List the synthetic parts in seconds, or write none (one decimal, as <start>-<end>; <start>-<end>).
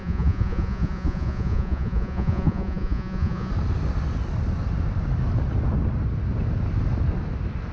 0.0-3.5